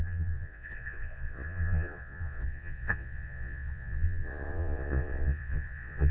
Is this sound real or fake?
fake